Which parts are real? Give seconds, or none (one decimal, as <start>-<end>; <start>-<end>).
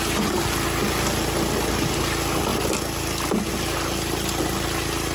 0.0-5.1